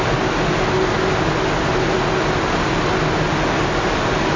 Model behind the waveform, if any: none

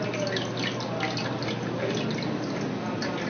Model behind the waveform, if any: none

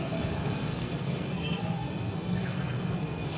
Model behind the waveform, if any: codec, SNAC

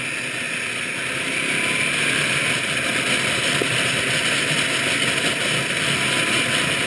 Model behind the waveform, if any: none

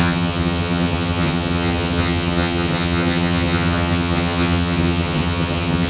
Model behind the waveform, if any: vocoder, HiFi-GAN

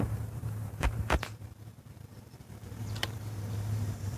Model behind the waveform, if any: vocoder, BigVGAN v2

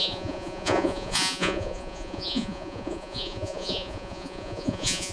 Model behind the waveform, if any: vocoder, Vocos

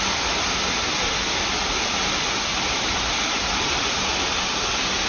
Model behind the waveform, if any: none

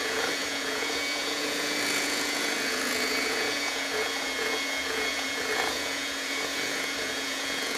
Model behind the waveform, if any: vocoder, Vocos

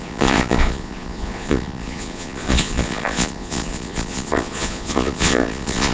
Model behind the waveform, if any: vocoder, Vocos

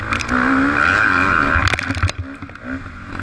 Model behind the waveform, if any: none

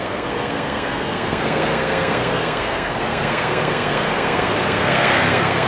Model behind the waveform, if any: codec, SNAC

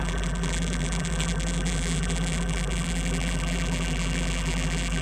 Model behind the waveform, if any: vocoder, BigVGAN v2